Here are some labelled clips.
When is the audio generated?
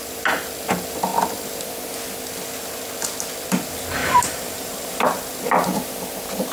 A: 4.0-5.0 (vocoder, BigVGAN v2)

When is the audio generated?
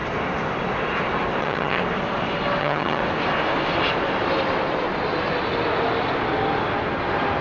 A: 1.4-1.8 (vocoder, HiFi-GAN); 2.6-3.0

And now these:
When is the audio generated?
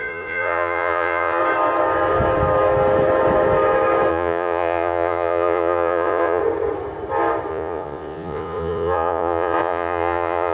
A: 0.0-1.4 (vocoder, Vocos); 4.1-6.4; 7.5-10.5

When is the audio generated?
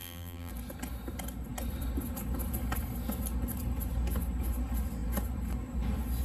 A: 0.0-0.5 (vocoder, BigVGAN v2)